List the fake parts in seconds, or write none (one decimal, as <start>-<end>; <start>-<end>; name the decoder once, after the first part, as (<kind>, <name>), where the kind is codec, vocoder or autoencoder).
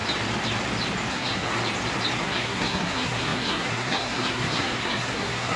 1.1-1.6 (codec, SNAC); 2.2-5.6